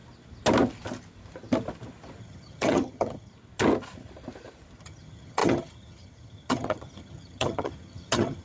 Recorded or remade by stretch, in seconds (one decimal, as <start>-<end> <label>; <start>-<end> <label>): 0.0-2.2 recorded; 2.2-3.3 remade; 3.3-4.8 recorded; 4.8-8.4 remade